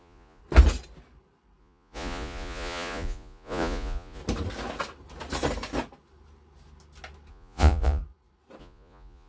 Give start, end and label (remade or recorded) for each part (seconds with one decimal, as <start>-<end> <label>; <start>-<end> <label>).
0.0-0.4 remade; 0.4-1.6 recorded; 1.6-4.2 remade; 4.2-7.3 recorded; 7.3-8.0 remade; 8.0-8.6 recorded; 8.6-9.3 remade

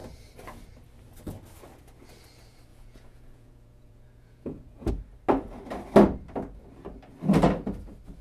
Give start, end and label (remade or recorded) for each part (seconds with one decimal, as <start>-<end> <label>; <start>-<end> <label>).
0.0-2.7 recorded; 2.7-4.9 remade; 4.9-8.2 recorded

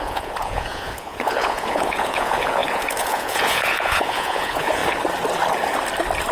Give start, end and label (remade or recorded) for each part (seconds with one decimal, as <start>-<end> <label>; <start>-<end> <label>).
0.0-4.8 remade; 4.8-6.3 recorded

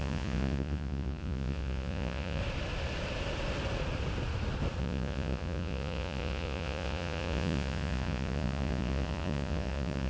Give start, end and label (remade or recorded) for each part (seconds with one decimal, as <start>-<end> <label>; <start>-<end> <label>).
0.0-2.4 remade; 2.4-4.8 recorded; 4.8-10.1 remade